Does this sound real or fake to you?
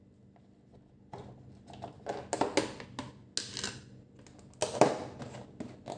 real